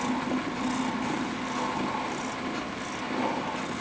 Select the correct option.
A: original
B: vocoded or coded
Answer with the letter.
A